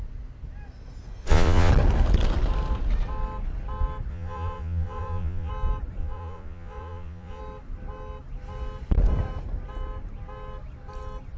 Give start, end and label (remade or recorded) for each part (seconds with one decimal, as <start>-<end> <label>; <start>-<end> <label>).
0.0-1.2 recorded; 1.2-1.7 remade; 1.7-4.1 recorded; 4.1-5.5 remade; 5.5-6.0 recorded; 6.0-7.4 remade; 7.4-11.4 recorded